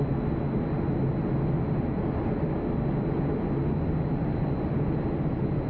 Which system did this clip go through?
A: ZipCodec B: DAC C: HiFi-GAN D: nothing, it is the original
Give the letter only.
D